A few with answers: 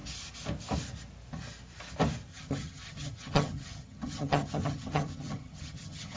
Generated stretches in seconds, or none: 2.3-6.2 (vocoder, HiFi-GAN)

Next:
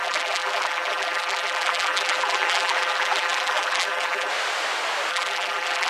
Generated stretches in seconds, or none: 0.0-4.3 (vocoder, BigVGAN v2); 5.1-5.9

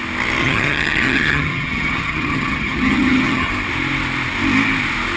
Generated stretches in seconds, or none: 0.4-3.5 (vocoder, HiFi-GAN)

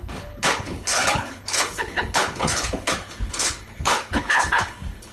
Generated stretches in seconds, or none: 0.0-5.1 (codec, HILCodec)